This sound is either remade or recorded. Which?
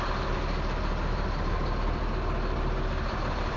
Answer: recorded